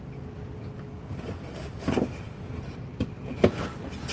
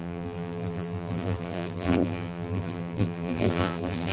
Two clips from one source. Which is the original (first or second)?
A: first